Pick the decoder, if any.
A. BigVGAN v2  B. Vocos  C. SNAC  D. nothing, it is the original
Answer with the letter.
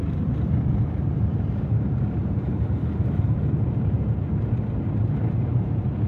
A